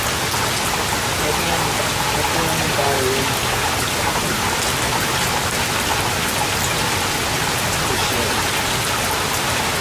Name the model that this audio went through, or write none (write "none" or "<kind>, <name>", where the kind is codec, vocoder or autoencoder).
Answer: none